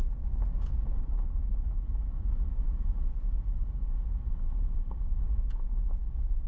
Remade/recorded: remade